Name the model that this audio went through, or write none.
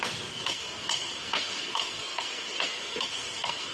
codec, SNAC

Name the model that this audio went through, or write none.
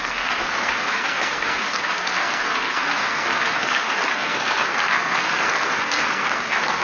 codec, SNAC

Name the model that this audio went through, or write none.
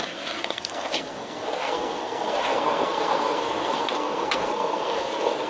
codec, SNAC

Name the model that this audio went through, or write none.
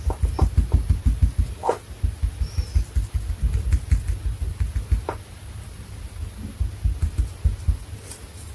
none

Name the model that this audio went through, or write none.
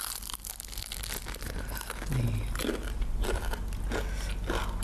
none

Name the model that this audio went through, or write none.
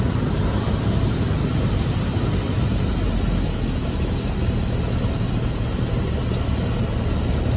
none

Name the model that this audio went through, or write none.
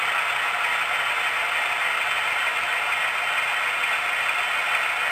none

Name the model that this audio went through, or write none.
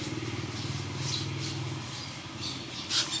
none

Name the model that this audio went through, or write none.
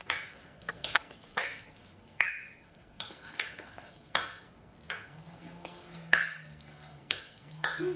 codec, SNAC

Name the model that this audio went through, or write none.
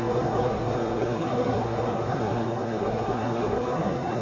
codec, SNAC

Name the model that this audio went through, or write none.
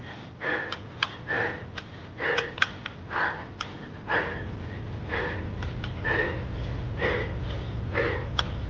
none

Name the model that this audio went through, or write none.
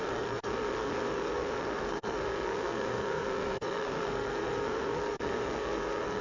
codec, SNAC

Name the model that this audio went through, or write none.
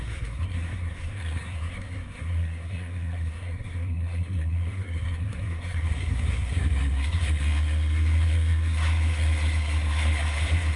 codec, SNAC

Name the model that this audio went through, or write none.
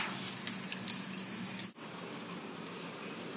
none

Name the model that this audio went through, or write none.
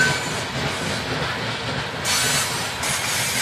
none